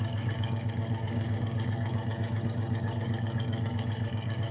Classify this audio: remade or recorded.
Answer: remade